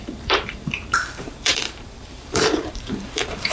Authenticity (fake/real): fake